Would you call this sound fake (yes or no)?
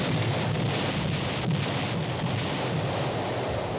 no